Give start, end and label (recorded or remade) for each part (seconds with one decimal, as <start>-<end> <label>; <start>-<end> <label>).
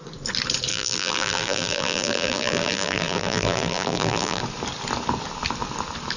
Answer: 0.0-0.7 recorded; 0.7-4.4 remade; 4.4-6.2 recorded